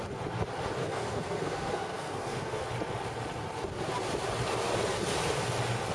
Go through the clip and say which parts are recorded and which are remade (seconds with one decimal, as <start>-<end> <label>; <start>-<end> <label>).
0.0-0.8 recorded; 0.8-2.6 remade; 2.6-5.9 recorded